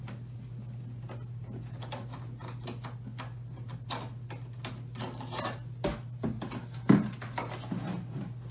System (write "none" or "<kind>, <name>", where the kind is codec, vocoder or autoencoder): none